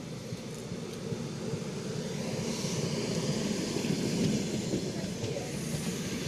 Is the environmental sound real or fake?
real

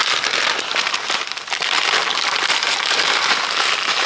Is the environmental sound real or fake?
real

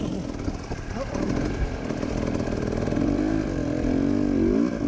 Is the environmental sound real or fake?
real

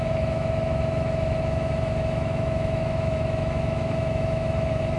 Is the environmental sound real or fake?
fake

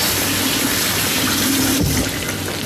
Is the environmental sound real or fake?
real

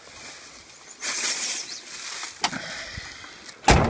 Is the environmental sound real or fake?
real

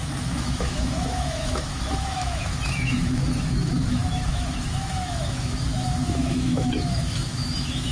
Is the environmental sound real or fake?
fake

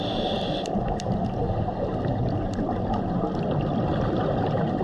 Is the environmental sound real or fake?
real